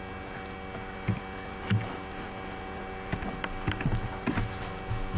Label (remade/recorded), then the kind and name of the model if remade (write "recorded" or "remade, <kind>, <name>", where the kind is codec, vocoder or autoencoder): recorded